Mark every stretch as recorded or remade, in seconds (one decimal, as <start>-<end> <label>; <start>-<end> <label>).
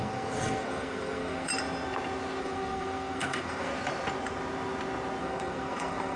0.0-1.5 remade; 1.5-2.4 recorded; 2.4-3.7 remade; 3.7-5.2 recorded; 5.2-6.2 remade